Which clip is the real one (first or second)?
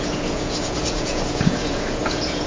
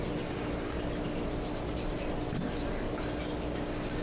second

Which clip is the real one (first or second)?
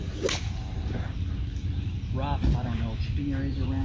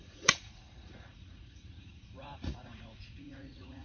first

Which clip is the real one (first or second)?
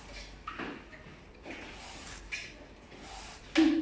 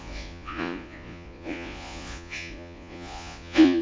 first